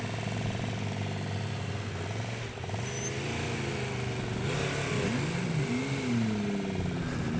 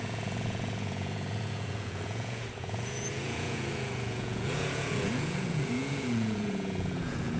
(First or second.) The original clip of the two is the first